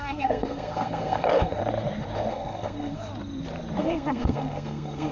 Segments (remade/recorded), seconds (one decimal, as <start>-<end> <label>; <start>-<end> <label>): 0.0-1.6 remade; 1.6-2.3 recorded; 2.3-3.1 remade; 3.1-3.8 recorded; 3.8-5.1 remade